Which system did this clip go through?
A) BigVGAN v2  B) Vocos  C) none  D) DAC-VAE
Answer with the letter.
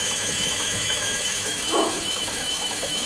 D